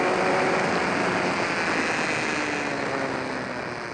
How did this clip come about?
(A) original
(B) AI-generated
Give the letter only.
A